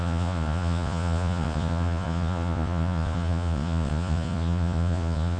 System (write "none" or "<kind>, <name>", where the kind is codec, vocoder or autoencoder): vocoder, Vocos